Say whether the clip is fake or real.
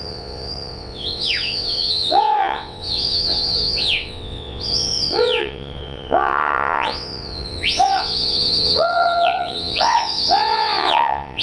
fake